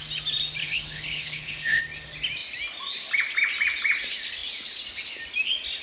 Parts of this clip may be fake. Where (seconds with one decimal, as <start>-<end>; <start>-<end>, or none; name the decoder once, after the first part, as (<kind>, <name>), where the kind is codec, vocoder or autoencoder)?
0.6-1.8 (codec, HILCodec)